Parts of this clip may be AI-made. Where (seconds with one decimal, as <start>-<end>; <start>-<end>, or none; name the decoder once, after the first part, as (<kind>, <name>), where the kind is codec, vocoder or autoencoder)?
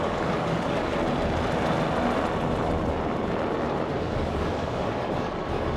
0.0-0.9 (codec, DAC); 4.0-5.8